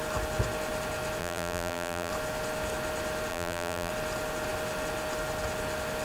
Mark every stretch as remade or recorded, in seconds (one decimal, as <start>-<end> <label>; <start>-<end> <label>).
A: 0.0-1.2 recorded; 1.2-2.1 remade; 2.1-3.3 recorded; 3.3-3.9 remade; 3.9-6.0 recorded